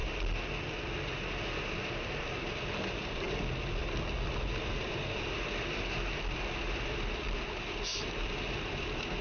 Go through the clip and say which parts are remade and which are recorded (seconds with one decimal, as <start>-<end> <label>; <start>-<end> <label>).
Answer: 0.0-9.2 remade

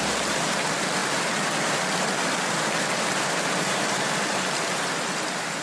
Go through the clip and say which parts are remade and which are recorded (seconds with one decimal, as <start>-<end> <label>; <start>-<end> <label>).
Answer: 0.0-5.6 recorded

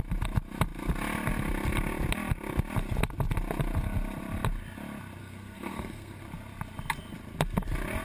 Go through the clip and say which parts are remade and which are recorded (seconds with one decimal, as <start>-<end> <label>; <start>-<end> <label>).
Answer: 0.0-5.2 recorded; 5.2-6.2 remade; 6.2-8.0 recorded

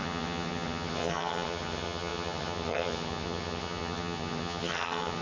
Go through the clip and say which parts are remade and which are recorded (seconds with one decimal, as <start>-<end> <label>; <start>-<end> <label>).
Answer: 0.0-5.2 remade